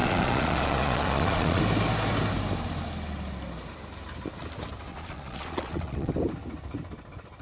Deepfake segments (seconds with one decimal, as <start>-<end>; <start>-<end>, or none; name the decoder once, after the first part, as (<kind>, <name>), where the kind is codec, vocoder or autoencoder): 0.0-1.6 (vocoder, Vocos); 4.9-6.1

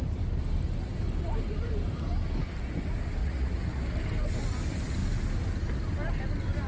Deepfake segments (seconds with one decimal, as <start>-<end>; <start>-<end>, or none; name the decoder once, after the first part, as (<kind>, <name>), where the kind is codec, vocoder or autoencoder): 3.2-3.8 (vocoder, Vocos)

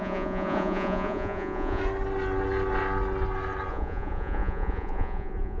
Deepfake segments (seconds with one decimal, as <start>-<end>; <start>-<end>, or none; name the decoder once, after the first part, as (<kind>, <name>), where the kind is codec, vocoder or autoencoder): 0.0-1.8 (vocoder, Vocos); 3.7-5.6

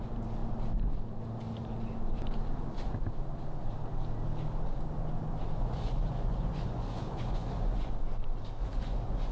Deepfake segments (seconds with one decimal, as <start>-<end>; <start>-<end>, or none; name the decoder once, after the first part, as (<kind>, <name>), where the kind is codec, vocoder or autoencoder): 5.6-7.9 (vocoder, Vocos); 8.6-9.3

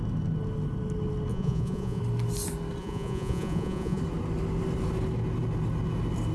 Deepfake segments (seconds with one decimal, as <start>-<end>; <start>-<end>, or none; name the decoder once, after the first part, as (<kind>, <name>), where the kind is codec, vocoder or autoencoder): 1.3-2.0 (vocoder, Vocos); 2.8-4.0